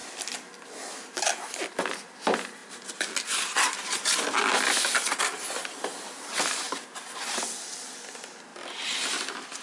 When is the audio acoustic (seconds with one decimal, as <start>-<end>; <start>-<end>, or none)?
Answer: 0.0-8.5; 9.2-9.6